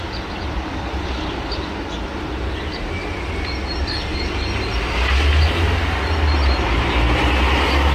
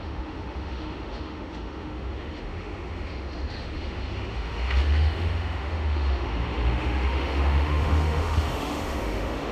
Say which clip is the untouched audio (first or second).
first